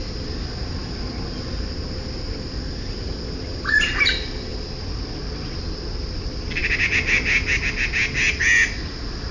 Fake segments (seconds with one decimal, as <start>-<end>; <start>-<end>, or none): none